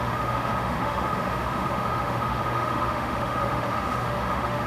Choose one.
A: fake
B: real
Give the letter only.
A